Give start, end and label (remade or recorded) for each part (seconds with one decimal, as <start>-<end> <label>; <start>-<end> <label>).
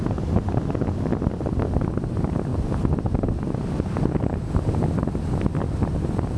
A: 0.0-6.4 recorded